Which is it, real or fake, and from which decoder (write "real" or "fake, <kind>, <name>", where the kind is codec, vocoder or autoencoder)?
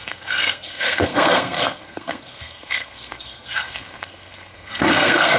fake, codec, SNAC